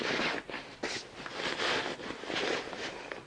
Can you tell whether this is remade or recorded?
recorded